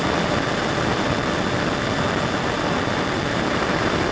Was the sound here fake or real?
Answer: fake